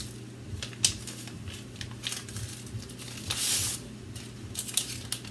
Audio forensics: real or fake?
real